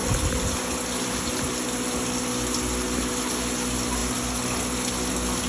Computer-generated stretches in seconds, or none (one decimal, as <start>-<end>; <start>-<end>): none